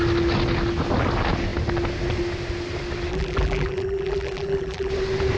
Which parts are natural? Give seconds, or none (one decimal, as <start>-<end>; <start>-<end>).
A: 0.0-3.1; 4.9-5.4